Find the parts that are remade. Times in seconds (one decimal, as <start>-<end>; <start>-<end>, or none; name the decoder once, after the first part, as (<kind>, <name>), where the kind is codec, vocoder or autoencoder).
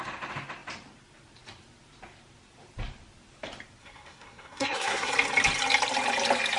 3.8-5.1 (codec, SNAC)